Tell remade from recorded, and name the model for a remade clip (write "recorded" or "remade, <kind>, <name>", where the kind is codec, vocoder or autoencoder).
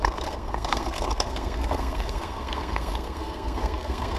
remade, codec, SNAC